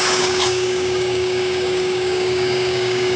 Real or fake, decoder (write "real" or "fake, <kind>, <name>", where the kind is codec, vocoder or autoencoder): fake, codec, DAC